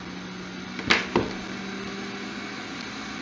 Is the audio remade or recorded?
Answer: recorded